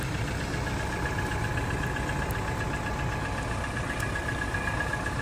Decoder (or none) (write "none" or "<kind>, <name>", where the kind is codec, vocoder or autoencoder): none